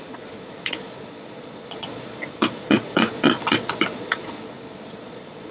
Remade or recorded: remade